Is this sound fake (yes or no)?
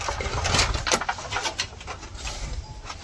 yes